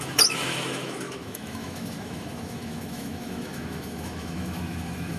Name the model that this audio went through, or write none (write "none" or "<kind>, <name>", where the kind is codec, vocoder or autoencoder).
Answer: autoencoder, DAC-VAE